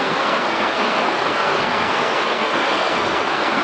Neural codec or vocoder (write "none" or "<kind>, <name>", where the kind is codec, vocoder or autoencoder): codec, SNAC